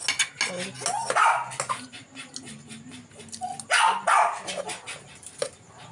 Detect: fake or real real